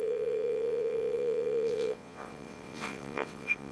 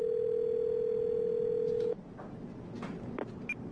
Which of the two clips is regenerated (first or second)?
first